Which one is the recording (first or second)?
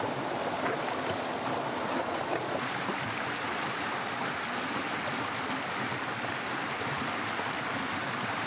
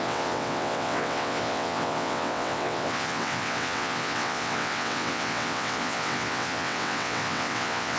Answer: first